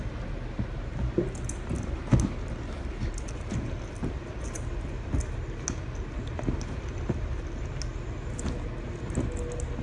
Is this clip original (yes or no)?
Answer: yes